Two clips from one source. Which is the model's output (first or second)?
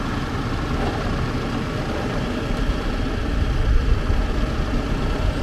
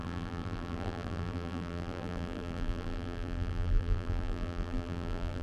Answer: second